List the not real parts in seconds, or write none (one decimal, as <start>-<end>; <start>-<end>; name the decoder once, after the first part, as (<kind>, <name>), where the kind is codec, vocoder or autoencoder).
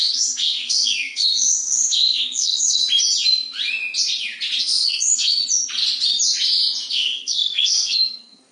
0.0-2.8 (codec, SNAC); 4.6-5.4; 6.9-8.5